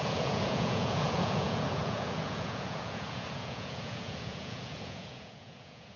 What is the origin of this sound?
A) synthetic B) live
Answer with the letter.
A